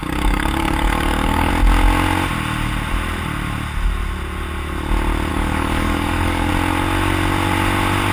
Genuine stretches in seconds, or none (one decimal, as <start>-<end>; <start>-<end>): 1.5-5.3; 6.5-8.1